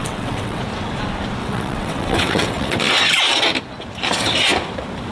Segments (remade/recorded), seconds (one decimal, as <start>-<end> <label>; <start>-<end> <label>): 0.0-0.6 remade; 0.6-1.4 recorded; 1.4-2.8 remade; 2.8-5.1 recorded